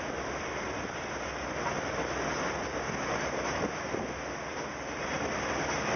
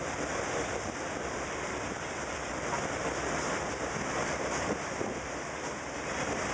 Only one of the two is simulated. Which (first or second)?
second